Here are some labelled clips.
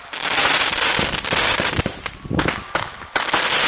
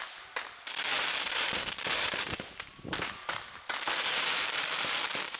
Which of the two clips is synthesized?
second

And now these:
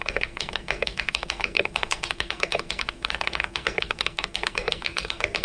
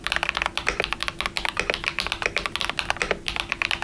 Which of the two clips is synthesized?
first